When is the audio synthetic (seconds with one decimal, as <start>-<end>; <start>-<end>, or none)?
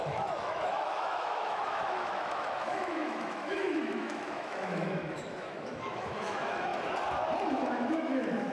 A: 0.0-6.7; 7.5-8.5